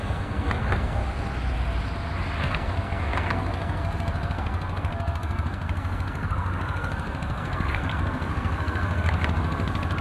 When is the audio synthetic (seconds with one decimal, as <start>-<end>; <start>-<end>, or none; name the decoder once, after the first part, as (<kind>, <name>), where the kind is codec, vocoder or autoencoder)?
0.0-1.0 (codec, SNAC); 2.4-10.0